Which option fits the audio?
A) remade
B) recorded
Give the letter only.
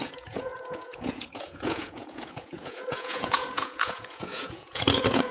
A